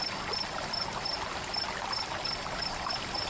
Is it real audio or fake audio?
real